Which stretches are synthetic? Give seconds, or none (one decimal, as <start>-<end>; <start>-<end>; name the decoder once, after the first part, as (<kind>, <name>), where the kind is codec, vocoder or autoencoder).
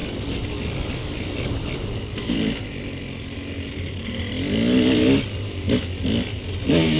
none